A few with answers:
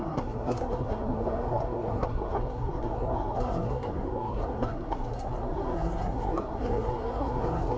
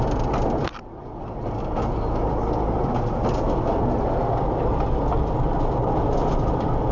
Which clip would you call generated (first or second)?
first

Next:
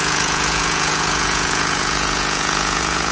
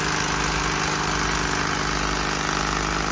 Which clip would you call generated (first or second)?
first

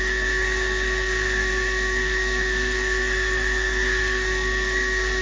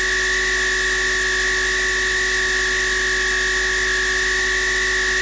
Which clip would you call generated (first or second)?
first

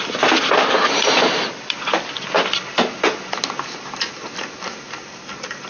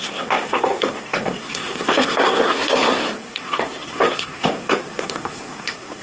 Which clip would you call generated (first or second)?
second